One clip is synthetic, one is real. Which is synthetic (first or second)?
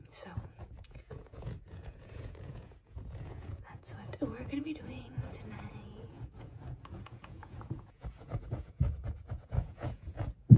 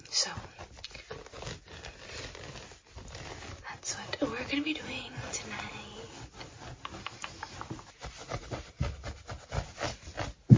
first